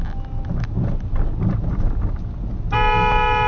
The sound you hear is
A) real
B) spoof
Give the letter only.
A